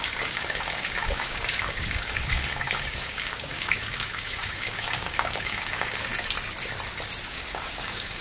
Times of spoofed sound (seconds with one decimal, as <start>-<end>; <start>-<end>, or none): 0.0-6.1; 7.2-8.2